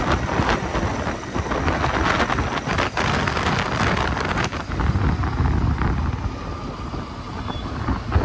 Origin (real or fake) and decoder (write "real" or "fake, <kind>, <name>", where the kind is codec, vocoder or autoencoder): real